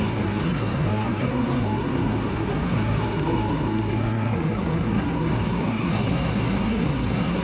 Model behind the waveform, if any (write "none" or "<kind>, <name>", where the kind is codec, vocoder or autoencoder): codec, SNAC